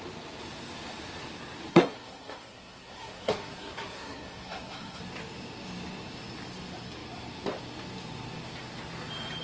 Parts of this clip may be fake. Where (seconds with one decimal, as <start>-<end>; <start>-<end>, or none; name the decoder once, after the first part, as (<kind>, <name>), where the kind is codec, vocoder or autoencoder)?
1.7-5.0 (codec, SNAC)